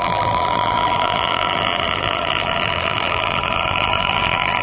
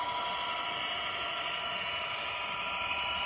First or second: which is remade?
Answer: first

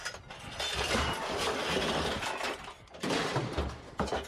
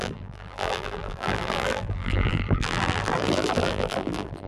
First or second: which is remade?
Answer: second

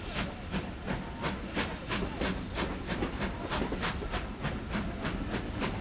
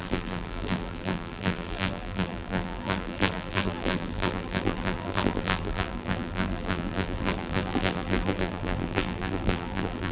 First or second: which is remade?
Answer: second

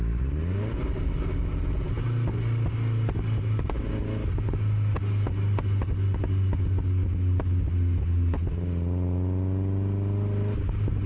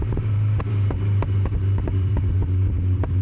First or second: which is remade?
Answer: second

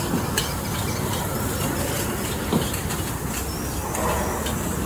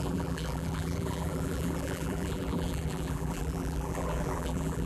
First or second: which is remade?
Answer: second